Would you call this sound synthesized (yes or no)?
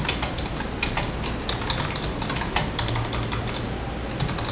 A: no